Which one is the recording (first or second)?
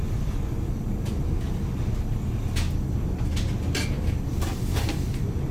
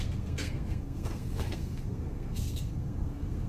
first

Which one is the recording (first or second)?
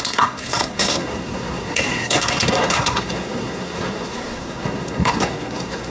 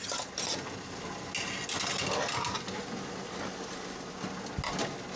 second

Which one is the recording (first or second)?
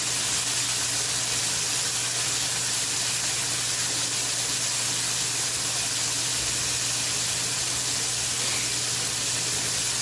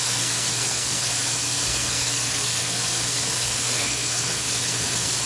first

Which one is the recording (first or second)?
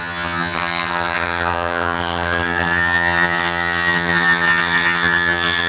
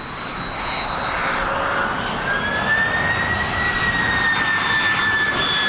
second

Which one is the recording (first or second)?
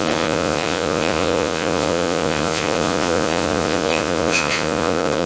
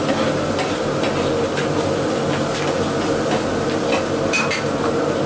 second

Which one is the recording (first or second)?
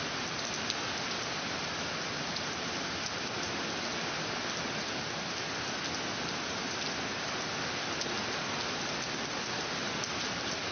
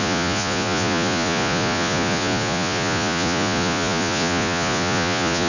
first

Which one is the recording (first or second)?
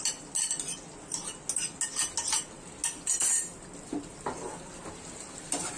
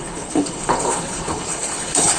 first